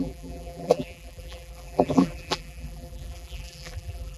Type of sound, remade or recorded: remade